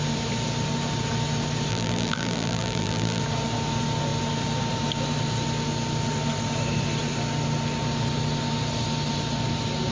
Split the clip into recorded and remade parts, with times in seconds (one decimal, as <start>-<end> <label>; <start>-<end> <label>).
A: 0.0-1.7 recorded; 1.7-3.2 remade; 3.2-9.9 recorded